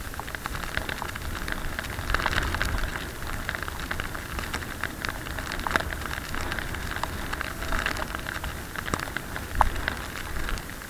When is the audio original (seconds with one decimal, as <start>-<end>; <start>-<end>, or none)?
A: 0.0-10.9